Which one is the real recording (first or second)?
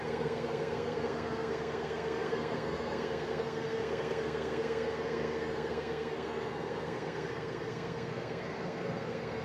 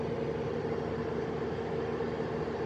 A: second